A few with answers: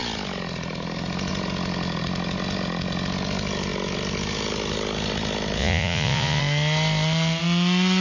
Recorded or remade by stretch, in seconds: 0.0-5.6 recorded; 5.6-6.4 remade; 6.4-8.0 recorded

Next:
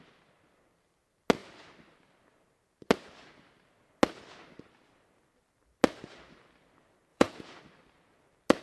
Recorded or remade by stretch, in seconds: 0.0-7.1 recorded; 7.1-7.6 remade; 7.6-8.6 recorded

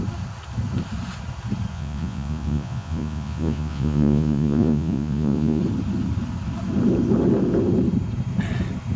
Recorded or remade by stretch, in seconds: 0.0-1.7 recorded; 1.7-5.6 remade; 5.6-9.0 recorded

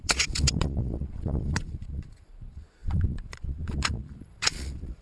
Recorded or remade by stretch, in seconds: 0.0-5.0 remade

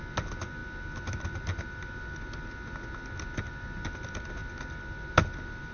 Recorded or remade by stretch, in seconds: 0.0-5.7 recorded

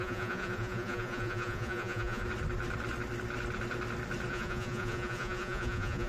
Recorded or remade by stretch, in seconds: 0.0-2.2 remade; 2.2-4.3 recorded; 4.3-6.1 remade

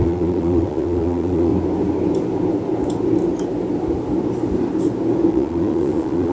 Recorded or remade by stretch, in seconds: 0.0-1.5 remade; 1.5-5.3 recorded; 5.3-6.3 remade